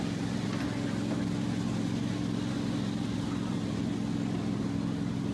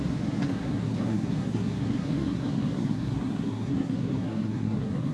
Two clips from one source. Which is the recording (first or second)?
first